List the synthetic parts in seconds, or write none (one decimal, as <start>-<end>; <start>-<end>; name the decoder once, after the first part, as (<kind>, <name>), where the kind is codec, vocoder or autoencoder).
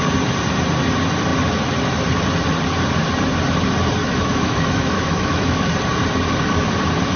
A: 4.0-5.7 (autoencoder, DAC-VAE)